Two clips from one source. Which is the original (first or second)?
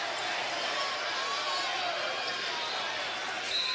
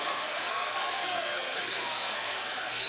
first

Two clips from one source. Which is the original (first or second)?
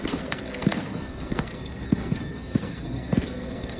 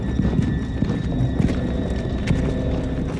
second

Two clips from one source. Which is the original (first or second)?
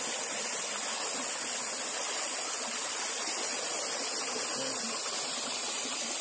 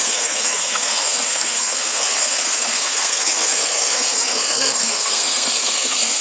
first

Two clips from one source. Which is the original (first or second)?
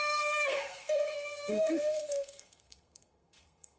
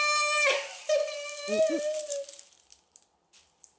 second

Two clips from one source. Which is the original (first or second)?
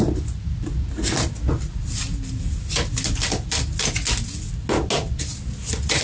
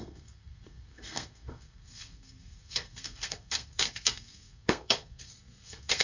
first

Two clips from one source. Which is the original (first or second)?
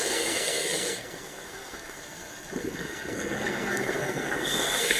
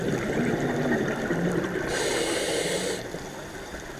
second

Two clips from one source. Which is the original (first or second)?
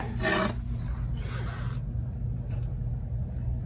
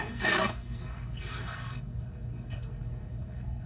first